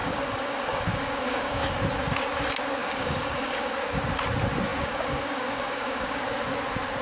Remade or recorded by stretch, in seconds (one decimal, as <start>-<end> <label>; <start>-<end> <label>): 0.0-1.8 remade; 1.8-2.8 recorded; 2.8-3.7 remade; 3.7-4.7 recorded; 4.7-6.2 remade; 6.2-7.0 recorded